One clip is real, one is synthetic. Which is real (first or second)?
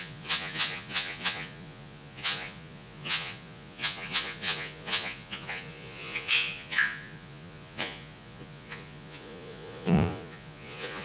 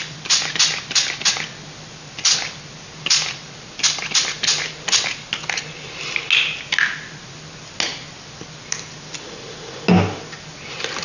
second